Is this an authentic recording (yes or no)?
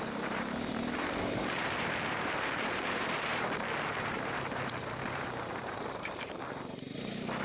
no